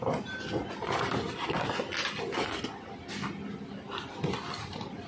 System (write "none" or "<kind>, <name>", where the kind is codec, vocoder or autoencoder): none